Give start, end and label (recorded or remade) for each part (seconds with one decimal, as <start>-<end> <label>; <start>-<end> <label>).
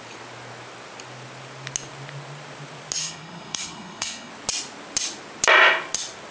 0.0-3.0 recorded; 3.0-4.3 remade; 4.3-6.3 recorded